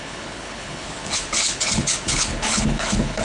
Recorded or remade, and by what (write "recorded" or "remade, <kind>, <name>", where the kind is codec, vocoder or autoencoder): remade, codec, HILCodec